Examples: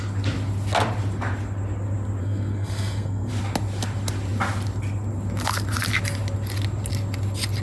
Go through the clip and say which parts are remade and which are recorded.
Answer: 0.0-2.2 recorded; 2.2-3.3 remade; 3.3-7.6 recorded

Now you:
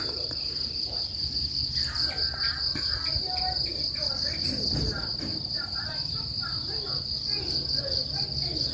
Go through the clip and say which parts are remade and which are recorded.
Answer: 0.0-8.7 recorded

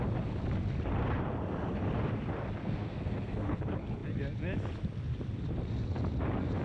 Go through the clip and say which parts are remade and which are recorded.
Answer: 0.0-2.6 recorded; 2.6-3.6 remade; 3.6-6.6 recorded

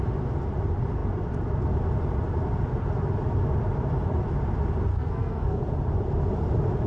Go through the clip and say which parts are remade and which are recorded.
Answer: 0.0-4.9 recorded; 4.9-5.6 remade; 5.6-6.9 recorded

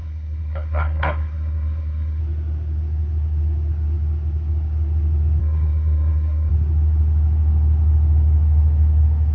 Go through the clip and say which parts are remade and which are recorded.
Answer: 0.0-2.2 remade; 2.2-5.4 recorded; 5.4-6.5 remade; 6.5-9.3 recorded